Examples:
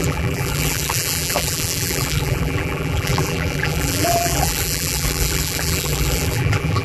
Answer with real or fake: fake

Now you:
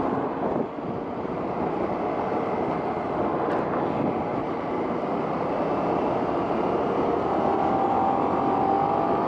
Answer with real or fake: real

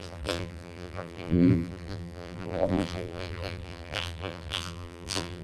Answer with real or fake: fake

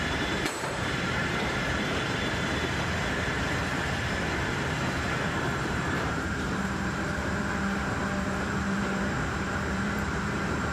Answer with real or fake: fake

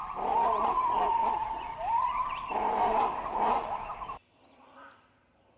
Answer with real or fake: fake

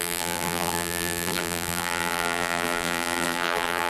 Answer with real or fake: fake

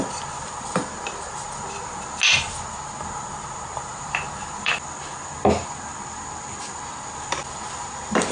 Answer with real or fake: real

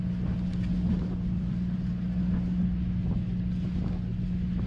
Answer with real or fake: real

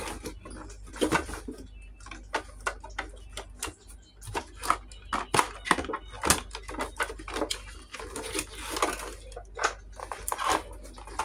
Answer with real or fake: real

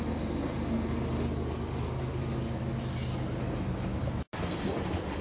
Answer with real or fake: real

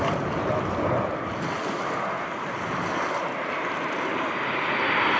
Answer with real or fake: real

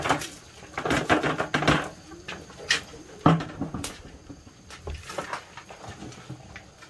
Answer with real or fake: real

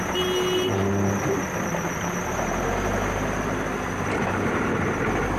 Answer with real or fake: real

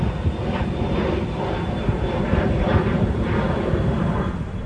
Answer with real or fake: real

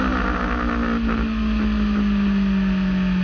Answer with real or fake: real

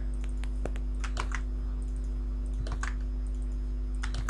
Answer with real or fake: real